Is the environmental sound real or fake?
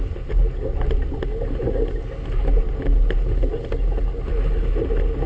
real